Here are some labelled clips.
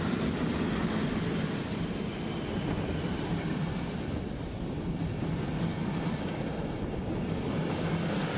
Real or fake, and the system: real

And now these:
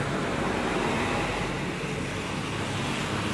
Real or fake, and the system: real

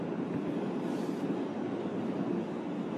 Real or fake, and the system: real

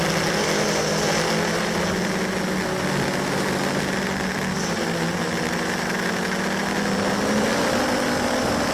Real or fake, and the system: real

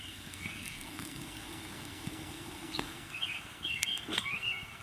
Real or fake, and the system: fake, codec, SNAC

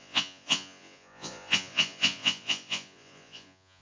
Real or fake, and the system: fake, vocoder, Vocos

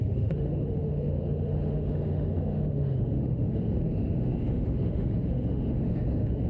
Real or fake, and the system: fake, autoencoder, DAC-VAE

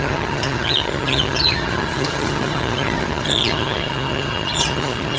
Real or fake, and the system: fake, vocoder, HiFi-GAN